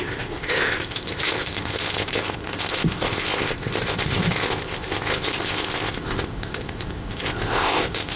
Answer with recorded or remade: remade